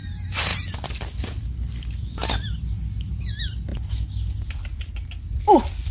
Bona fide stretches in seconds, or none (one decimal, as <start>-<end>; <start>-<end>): 0.0-5.9